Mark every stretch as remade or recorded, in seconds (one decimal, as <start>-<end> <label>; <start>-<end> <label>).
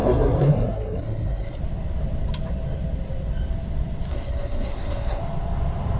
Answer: 0.0-1.6 remade; 1.6-4.1 recorded; 4.1-5.2 remade; 5.2-6.0 recorded